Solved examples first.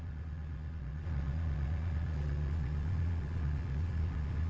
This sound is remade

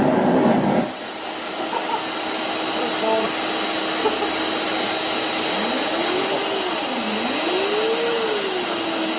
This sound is recorded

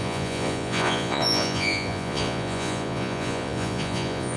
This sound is remade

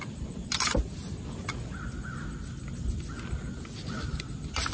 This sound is recorded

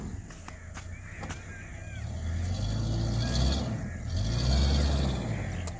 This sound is recorded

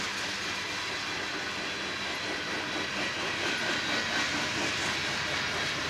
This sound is recorded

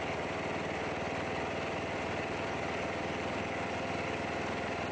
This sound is recorded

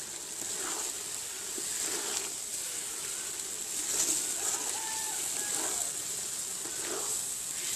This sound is recorded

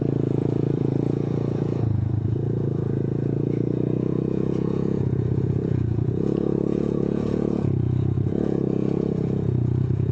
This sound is remade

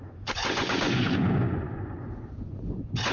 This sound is remade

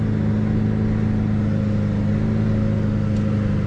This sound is recorded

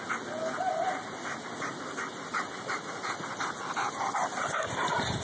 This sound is recorded